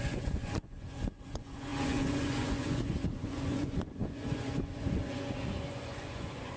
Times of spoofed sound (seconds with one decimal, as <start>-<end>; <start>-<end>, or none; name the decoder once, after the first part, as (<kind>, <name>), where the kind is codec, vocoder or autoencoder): 0.0-6.6 (vocoder, Vocos)